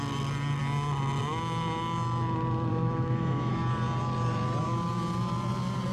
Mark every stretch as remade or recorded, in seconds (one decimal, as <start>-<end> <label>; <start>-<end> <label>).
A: 0.0-2.7 recorded; 2.7-3.5 remade; 3.5-5.9 recorded